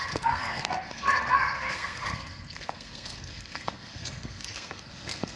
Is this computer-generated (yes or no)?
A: yes